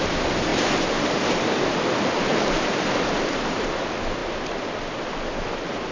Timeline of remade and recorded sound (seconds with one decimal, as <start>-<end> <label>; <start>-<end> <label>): 0.0-5.9 recorded

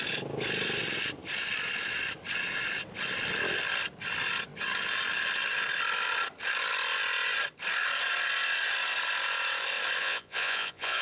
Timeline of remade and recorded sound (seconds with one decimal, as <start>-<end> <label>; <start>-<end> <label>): 0.0-10.0 recorded; 10.0-11.0 remade

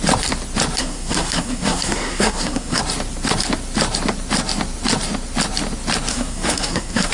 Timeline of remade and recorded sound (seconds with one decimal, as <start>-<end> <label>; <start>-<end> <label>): 0.0-0.8 recorded; 0.8-2.8 remade; 2.8-6.1 recorded; 6.1-7.1 remade

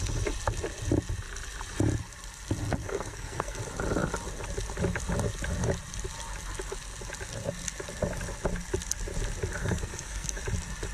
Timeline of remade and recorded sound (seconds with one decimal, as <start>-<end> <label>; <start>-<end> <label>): 0.0-2.8 recorded; 2.8-3.6 remade; 3.6-9.6 recorded; 9.6-10.4 remade; 10.4-10.9 recorded

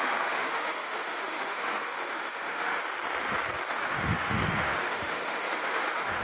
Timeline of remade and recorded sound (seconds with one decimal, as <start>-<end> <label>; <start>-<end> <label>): 0.0-2.8 remade; 2.8-3.7 recorded; 3.7-6.2 remade

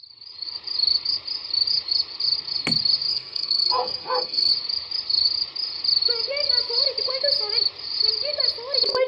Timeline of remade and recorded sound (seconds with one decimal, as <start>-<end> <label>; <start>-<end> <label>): 0.0-3.1 recorded; 3.1-4.5 remade; 4.5-9.1 recorded

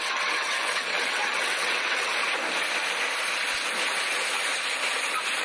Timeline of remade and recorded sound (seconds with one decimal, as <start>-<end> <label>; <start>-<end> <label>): 0.0-2.1 remade; 2.1-5.4 recorded

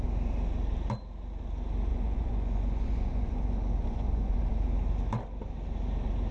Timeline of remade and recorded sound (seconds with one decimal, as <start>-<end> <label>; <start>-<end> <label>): 0.0-1.9 recorded; 1.9-4.5 remade; 4.5-6.3 recorded